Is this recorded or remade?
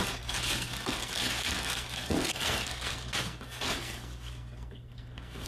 remade